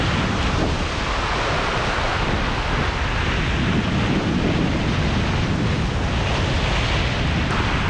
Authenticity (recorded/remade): recorded